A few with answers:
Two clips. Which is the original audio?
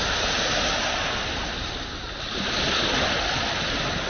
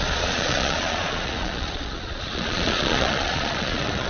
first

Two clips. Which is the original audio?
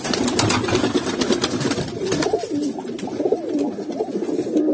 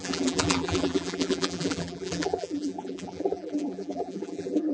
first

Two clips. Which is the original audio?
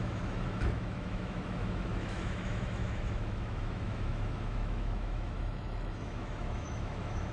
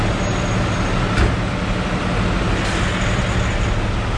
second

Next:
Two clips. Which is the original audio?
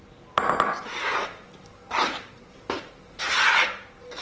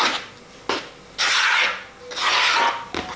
second